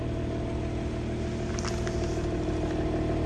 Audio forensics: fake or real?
real